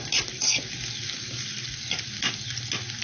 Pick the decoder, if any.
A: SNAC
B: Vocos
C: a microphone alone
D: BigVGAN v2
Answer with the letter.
C